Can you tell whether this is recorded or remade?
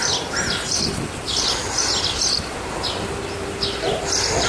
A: recorded